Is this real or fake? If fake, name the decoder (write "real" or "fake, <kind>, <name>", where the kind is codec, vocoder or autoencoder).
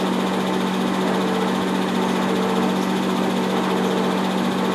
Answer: real